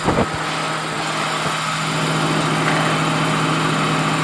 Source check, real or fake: real